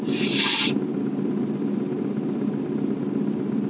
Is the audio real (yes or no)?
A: yes